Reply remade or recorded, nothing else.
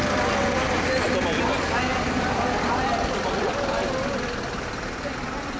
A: recorded